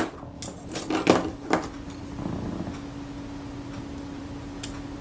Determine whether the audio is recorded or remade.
recorded